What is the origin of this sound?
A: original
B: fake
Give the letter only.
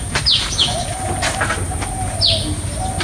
A